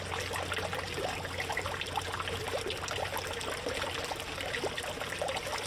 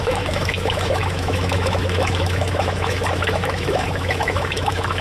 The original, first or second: first